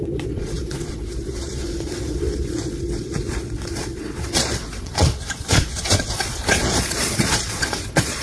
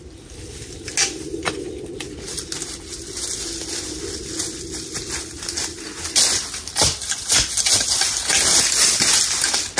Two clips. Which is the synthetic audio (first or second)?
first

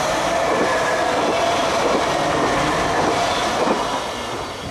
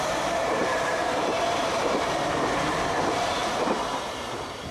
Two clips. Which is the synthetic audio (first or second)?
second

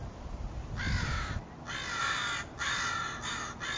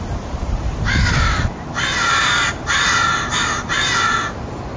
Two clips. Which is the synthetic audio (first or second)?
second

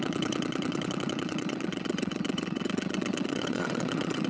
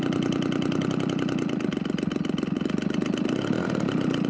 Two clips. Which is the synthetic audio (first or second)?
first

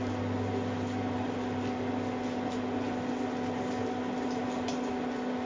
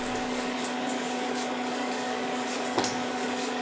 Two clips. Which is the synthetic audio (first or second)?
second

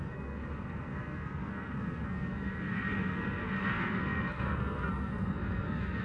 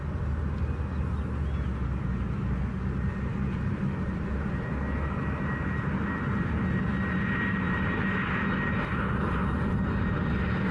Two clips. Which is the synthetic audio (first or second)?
first